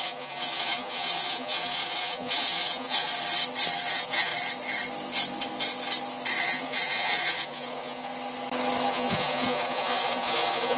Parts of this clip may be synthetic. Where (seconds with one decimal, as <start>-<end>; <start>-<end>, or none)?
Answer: 0.0-3.1; 3.9-4.3; 6.4-8.1; 8.9-10.8